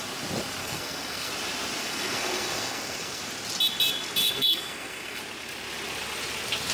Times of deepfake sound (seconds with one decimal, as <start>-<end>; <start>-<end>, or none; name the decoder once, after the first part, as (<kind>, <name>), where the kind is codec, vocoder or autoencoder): 0.6-1.3 (codec, SNAC); 1.8-3.2; 4.2-5.2

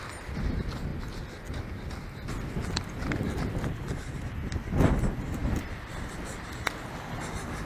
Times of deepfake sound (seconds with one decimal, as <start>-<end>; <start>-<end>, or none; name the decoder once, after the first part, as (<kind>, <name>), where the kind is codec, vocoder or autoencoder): none

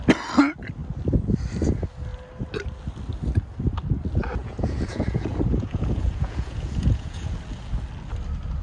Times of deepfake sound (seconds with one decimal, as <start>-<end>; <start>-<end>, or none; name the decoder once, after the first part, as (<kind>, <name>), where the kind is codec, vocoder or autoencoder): 4.4-7.3 (vocoder, Vocos)

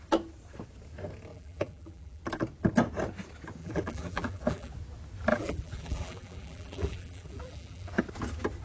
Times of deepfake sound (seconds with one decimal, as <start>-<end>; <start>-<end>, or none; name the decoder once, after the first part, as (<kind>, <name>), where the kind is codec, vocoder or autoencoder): 1.3-2.2 (vocoder, BigVGAN v2); 3.6-4.7; 5.3-8.0